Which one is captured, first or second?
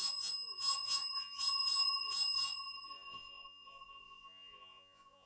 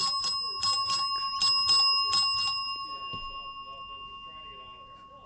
second